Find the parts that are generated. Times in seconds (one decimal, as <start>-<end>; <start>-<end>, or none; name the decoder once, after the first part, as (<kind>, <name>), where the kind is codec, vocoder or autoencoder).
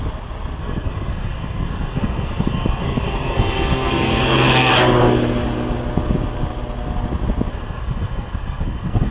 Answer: 0.6-4.7 (codec, SNAC); 7.5-9.1